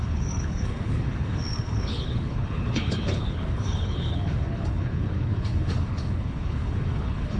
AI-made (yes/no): yes